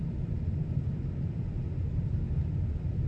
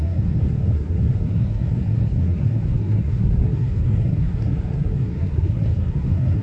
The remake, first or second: second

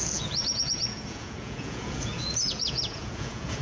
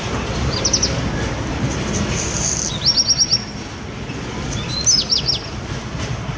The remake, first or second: first